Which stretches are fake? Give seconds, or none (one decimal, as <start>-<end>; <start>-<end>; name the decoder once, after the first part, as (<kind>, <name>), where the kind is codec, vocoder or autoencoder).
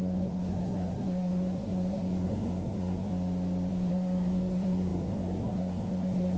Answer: 0.0-3.1 (codec, SNAC); 3.7-6.4